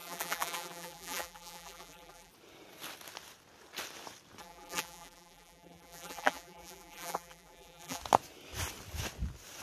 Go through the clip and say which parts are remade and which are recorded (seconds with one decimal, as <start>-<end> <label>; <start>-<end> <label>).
0.0-2.3 remade; 2.3-4.4 recorded; 4.4-8.0 remade; 8.0-9.6 recorded